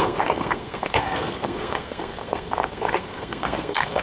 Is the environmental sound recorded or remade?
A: remade